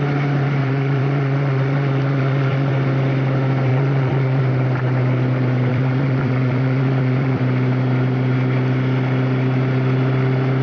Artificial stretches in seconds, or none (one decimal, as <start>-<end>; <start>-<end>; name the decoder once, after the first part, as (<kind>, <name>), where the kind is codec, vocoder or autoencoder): 0.6-2.7 (vocoder, Vocos); 3.7-4.4; 5.7-7.4